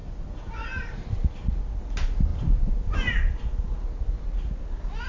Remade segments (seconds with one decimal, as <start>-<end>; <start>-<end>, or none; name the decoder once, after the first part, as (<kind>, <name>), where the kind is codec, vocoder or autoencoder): none